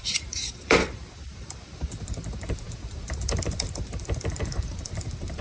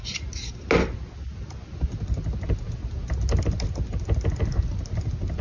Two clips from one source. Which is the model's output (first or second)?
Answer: first